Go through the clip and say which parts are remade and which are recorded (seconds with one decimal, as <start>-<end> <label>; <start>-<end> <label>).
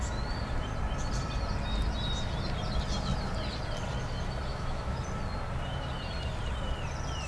0.0-4.5 recorded; 4.5-5.0 remade; 5.0-7.3 recorded